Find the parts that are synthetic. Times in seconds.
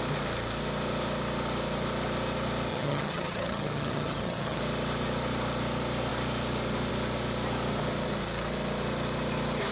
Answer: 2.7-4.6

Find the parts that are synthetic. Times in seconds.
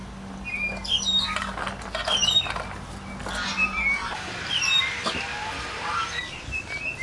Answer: 3.6-4.8; 5.4-6.1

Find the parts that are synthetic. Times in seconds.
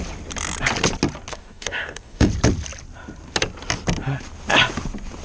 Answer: 1.3-2.3